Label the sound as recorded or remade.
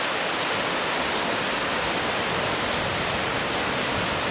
recorded